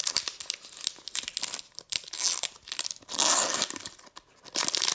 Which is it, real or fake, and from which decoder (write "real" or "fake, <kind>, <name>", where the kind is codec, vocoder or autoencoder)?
real